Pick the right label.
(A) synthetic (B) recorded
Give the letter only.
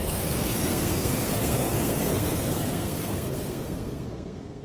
A